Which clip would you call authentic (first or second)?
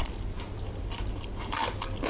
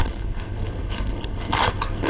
first